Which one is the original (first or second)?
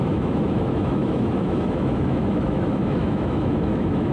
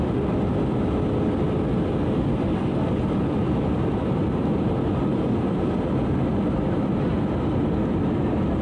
second